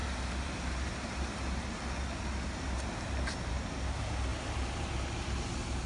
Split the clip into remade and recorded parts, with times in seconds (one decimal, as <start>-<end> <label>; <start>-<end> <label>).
0.0-5.9 recorded